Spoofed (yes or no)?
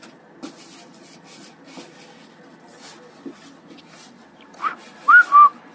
no